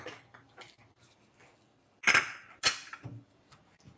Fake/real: real